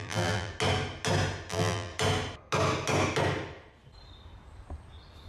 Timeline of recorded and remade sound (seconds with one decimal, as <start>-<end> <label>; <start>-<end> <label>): 0.0-0.5 remade; 0.5-1.5 recorded; 1.5-1.9 remade; 1.9-5.3 recorded